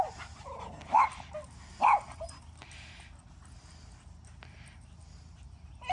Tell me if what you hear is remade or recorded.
recorded